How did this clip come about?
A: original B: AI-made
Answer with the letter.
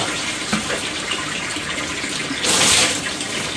A